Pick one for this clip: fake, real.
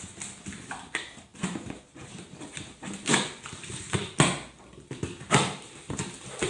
real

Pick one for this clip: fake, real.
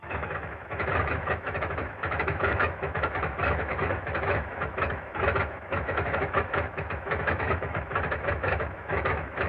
fake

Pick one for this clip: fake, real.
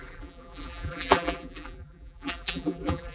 fake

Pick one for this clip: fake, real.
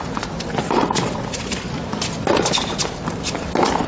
real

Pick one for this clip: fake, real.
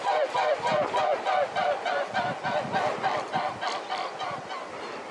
real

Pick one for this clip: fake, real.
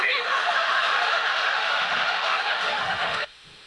fake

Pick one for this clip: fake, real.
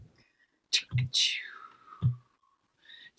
real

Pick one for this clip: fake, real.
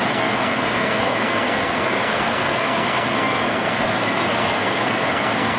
fake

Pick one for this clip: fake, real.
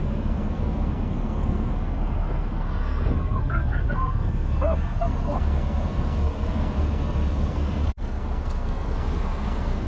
fake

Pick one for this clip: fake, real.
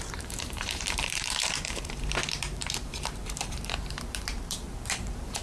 fake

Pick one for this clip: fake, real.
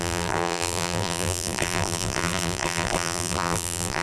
fake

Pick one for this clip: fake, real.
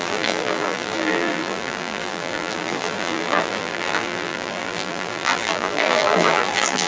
fake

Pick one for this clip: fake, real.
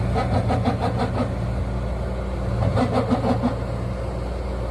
real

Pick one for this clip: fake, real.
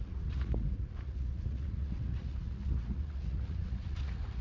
fake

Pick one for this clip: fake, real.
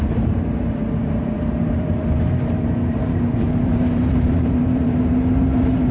fake